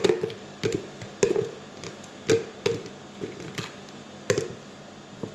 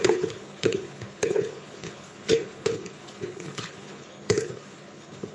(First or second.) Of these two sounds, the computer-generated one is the second